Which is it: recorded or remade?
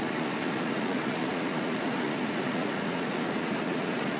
remade